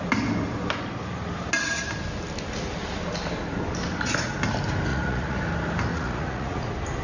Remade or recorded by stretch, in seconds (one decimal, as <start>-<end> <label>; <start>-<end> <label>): 0.0-4.9 recorded; 4.9-5.4 remade; 5.4-5.9 recorded; 5.9-6.6 remade; 6.6-7.0 recorded